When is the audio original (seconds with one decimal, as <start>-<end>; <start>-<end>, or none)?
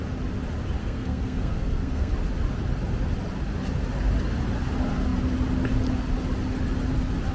0.0-0.8; 2.1-7.3